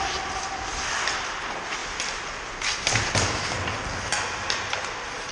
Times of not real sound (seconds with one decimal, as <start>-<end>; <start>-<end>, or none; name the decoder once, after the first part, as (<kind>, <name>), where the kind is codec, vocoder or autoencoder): none